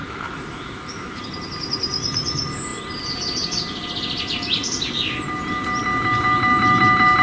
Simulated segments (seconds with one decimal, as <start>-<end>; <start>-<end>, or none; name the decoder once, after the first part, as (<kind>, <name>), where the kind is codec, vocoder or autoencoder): 0.0-1.2 (autoencoder, DAC-VAE)